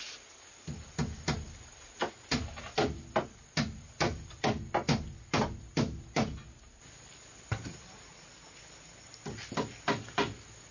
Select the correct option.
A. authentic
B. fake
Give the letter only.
A